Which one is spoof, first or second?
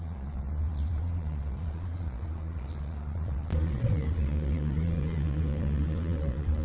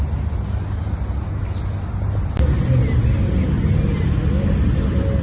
first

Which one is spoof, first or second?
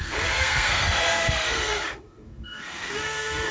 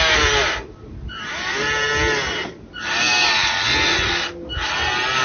first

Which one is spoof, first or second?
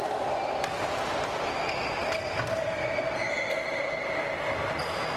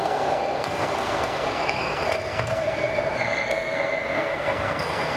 second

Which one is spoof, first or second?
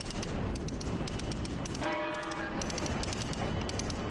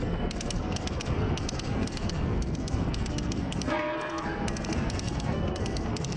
second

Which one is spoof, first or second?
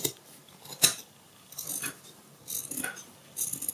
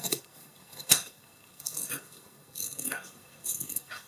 second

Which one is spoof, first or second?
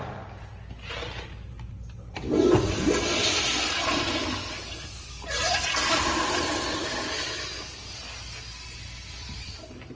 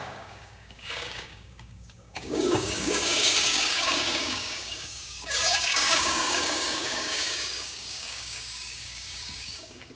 second